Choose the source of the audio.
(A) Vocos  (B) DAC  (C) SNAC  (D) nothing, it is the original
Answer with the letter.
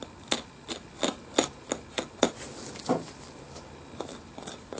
D